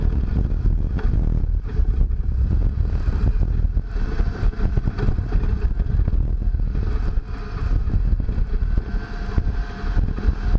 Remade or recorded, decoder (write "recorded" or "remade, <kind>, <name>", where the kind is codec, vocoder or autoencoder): recorded